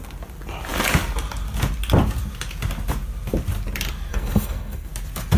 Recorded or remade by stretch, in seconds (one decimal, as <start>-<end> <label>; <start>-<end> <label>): 0.0-4.1 recorded; 4.1-4.9 remade; 4.9-5.4 recorded